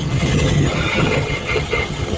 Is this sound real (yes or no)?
no